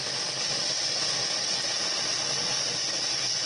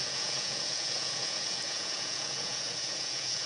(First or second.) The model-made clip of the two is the second